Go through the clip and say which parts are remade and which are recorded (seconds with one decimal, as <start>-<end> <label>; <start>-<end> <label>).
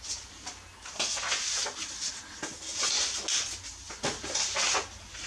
0.0-5.3 recorded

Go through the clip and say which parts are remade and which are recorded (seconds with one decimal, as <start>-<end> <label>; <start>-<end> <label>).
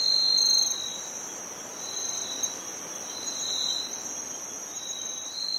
0.0-5.6 recorded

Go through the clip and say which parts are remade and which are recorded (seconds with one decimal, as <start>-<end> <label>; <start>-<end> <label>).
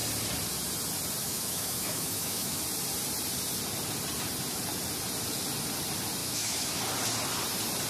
0.0-1.2 recorded; 1.2-2.6 remade; 2.6-6.2 recorded; 6.2-6.8 remade; 6.8-7.9 recorded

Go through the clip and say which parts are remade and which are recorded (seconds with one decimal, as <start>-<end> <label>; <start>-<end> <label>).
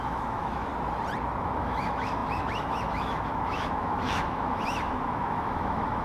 0.0-0.7 remade; 0.7-1.4 recorded; 1.4-6.0 remade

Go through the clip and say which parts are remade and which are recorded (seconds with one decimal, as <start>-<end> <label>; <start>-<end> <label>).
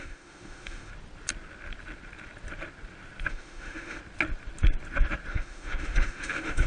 0.0-0.9 remade; 0.9-3.3 recorded; 3.3-4.0 remade; 4.0-5.3 recorded; 5.3-6.7 remade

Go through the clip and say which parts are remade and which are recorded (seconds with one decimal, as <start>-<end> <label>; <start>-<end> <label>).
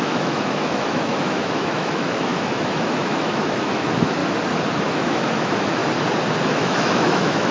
0.0-4.2 remade; 4.2-4.9 recorded; 4.9-5.8 remade; 5.8-6.4 recorded; 6.4-7.5 remade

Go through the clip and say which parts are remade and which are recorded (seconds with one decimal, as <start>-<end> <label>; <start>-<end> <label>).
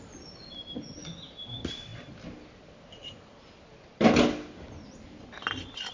0.0-5.9 recorded